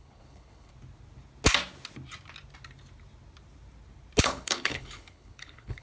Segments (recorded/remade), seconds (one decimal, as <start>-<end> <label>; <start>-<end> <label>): 0.0-0.7 remade; 0.7-4.2 recorded; 4.2-5.8 remade